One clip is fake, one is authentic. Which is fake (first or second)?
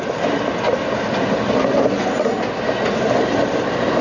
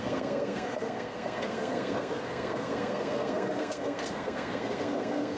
second